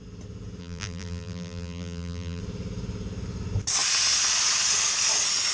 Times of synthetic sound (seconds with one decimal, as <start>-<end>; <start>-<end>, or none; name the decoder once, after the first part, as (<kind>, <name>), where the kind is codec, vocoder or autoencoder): 0.6-2.4 (vocoder, BigVGAN v2)